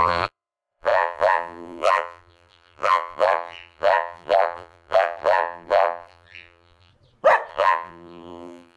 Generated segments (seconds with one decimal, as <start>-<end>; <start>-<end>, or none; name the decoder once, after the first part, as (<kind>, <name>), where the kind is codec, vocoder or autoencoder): 0.0-6.9 (vocoder, BigVGAN v2); 7.5-8.8